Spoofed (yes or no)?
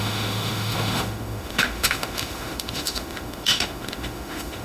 yes